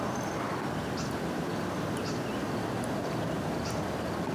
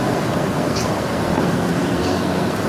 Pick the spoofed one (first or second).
second